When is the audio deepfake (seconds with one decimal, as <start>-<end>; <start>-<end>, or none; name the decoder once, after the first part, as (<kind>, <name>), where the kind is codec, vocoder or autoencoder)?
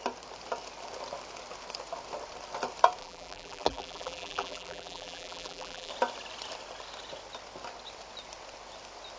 3.0-5.9 (vocoder, BigVGAN v2)